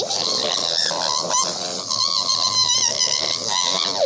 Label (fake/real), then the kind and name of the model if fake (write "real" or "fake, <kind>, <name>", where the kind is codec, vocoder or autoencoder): real